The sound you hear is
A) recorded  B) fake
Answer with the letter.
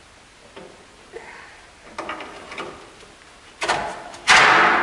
A